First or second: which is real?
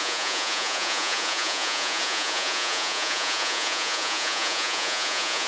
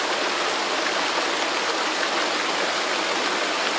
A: second